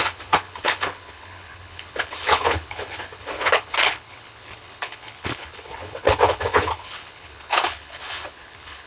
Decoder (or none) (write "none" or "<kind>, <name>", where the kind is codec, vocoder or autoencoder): codec, HILCodec